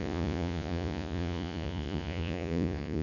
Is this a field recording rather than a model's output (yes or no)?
no